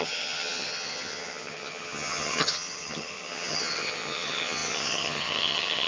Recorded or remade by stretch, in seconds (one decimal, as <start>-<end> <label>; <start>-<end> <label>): 0.0-5.9 remade